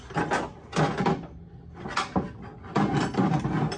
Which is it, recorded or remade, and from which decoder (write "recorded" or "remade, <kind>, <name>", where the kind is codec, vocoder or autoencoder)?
recorded